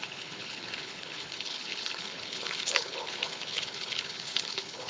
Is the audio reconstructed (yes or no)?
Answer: yes